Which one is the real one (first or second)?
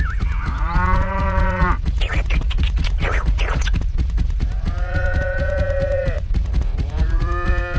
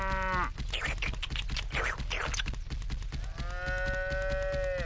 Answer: second